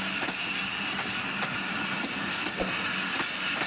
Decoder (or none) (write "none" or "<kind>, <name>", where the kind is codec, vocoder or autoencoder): none